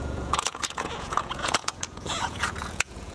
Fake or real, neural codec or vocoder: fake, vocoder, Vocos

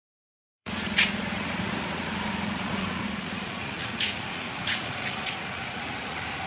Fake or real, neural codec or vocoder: fake, vocoder, Vocos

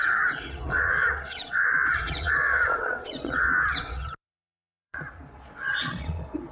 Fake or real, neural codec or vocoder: fake, vocoder, Vocos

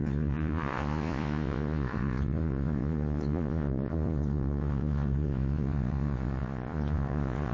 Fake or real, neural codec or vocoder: fake, vocoder, Vocos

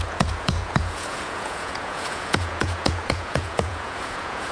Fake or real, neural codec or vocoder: fake, vocoder, Vocos